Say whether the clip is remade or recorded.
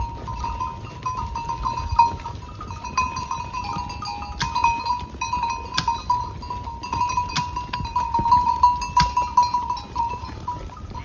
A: recorded